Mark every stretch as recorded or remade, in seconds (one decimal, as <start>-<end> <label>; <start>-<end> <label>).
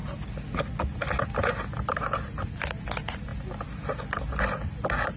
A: 0.0-5.2 recorded